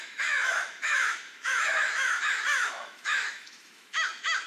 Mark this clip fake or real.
fake